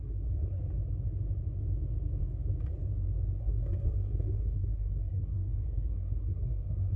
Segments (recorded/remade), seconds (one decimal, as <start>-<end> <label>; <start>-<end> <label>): 0.0-0.6 remade; 0.6-3.4 recorded; 3.4-7.0 remade